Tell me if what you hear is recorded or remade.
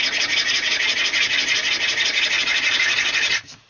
recorded